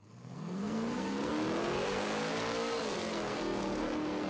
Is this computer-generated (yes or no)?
yes